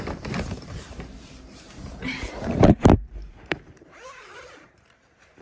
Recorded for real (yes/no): no